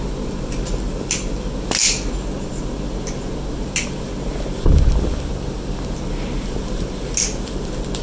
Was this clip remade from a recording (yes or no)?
no